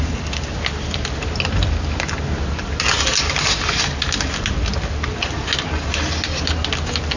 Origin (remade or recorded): recorded